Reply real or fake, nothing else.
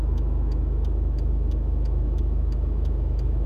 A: fake